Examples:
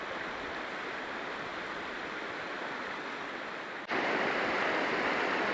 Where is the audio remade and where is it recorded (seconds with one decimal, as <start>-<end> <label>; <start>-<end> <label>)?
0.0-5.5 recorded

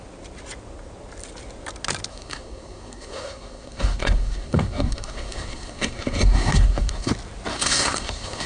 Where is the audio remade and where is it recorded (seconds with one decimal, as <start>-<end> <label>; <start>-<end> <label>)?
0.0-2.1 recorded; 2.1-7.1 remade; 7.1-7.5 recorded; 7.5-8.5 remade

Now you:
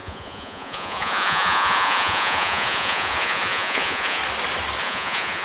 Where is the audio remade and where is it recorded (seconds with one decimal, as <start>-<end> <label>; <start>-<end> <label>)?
0.0-4.2 remade; 4.2-4.8 recorded; 4.8-5.4 remade

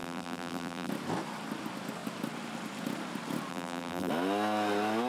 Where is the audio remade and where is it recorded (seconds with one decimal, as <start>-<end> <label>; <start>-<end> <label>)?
0.0-0.9 remade; 0.9-3.5 recorded; 3.5-4.1 remade; 4.1-5.1 recorded

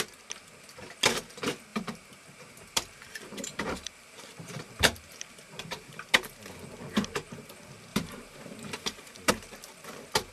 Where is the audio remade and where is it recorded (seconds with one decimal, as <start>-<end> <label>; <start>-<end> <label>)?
0.0-1.7 recorded; 1.7-6.0 remade; 6.0-7.9 recorded; 7.9-9.3 remade; 9.3-10.3 recorded